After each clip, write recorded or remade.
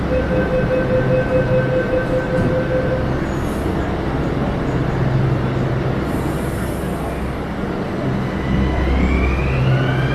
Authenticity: recorded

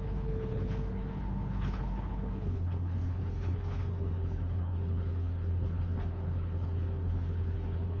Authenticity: remade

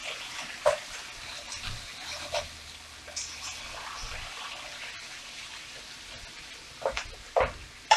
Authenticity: recorded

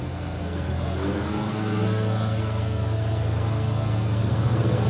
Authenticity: remade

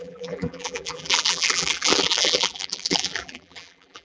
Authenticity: remade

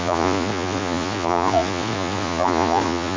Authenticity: remade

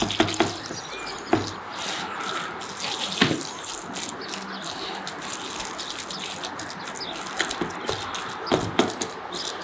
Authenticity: recorded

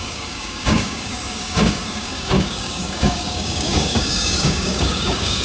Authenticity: remade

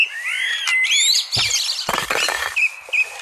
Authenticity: recorded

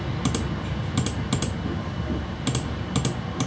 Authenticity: recorded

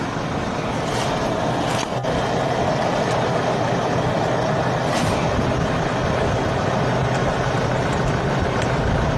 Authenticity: recorded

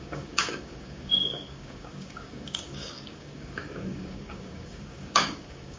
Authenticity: remade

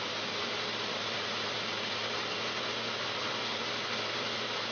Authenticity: recorded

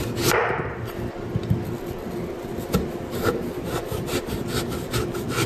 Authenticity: recorded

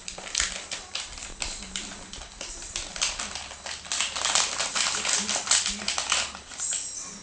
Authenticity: recorded